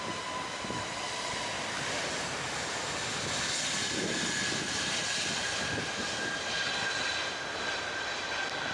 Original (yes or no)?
yes